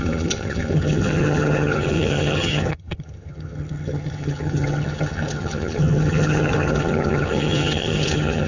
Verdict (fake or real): fake